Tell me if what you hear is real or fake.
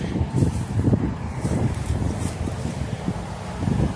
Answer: fake